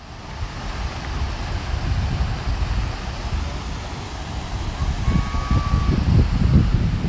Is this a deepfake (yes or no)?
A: no